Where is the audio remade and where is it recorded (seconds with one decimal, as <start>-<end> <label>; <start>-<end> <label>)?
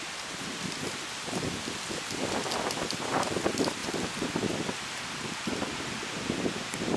0.0-7.0 recorded